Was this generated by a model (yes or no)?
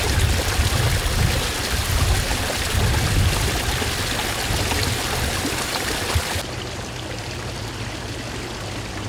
no